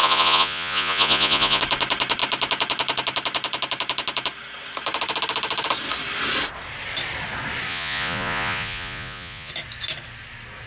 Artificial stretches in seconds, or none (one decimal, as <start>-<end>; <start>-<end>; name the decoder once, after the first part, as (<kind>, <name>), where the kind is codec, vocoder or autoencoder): 0.0-1.6 (vocoder, Vocos); 7.7-9.5